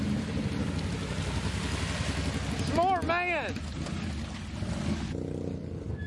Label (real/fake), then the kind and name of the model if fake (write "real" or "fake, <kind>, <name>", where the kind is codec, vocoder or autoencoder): real